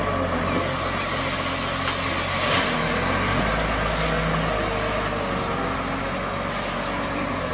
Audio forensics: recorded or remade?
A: recorded